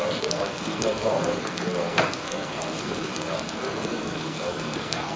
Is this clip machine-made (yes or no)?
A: yes